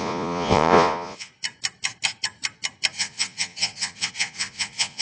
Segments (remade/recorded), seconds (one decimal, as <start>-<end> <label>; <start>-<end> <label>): 0.0-1.3 remade; 1.3-2.9 recorded; 2.9-5.0 remade